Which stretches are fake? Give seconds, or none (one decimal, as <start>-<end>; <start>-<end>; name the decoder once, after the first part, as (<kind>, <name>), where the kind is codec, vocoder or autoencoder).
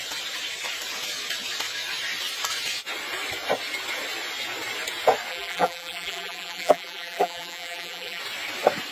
5.3-8.2 (vocoder, BigVGAN v2)